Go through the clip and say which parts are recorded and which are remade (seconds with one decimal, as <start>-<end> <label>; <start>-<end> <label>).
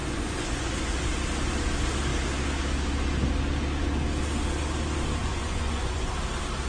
0.0-0.8 remade; 0.8-5.2 recorded; 5.2-6.1 remade; 6.1-6.7 recorded